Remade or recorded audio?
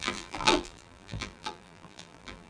remade